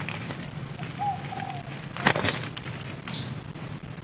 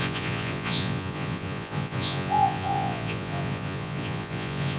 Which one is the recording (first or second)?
first